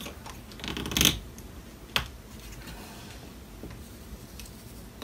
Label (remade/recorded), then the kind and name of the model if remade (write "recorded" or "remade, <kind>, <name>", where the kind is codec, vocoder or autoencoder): recorded